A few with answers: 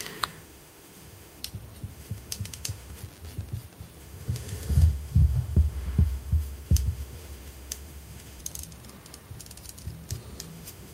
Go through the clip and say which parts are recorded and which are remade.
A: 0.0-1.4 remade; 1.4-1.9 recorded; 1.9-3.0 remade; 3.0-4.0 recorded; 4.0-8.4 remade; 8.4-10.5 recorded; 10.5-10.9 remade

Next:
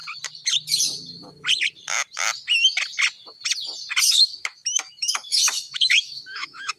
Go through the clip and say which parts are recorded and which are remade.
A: 0.0-4.1 recorded; 4.1-6.8 remade

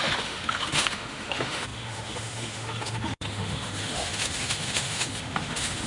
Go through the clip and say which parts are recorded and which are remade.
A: 0.0-5.9 remade

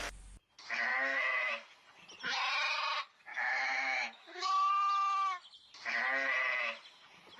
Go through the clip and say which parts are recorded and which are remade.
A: 0.0-0.9 recorded; 0.9-1.5 remade; 1.5-3.3 recorded; 3.3-4.7 remade; 4.7-7.4 recorded